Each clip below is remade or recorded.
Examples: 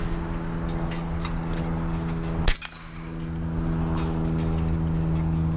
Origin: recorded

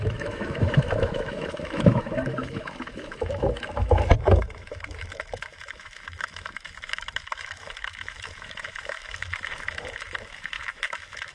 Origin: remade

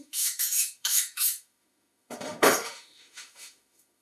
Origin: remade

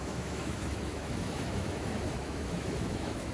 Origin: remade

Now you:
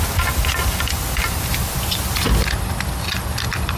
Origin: recorded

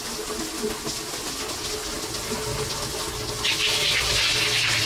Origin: recorded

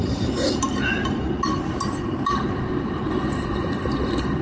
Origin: recorded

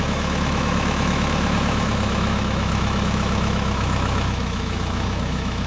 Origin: remade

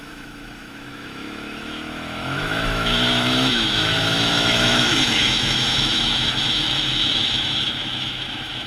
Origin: remade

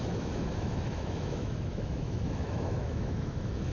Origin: remade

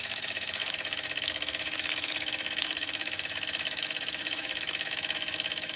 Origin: remade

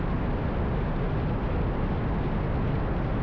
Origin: recorded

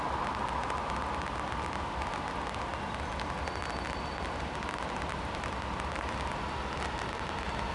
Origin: recorded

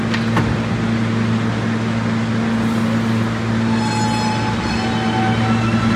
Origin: recorded